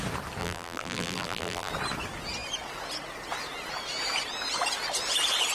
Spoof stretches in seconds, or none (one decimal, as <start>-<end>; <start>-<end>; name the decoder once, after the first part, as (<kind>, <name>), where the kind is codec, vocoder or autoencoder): 0.4-1.7 (vocoder, BigVGAN v2)